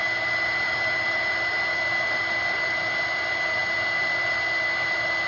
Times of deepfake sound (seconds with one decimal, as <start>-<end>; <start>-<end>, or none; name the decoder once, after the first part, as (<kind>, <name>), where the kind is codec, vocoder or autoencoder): none